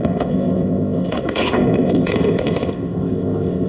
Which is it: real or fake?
fake